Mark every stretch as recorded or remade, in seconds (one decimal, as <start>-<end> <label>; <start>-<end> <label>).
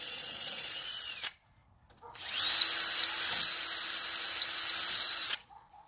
0.0-1.6 remade; 1.6-4.9 recorded; 4.9-5.9 remade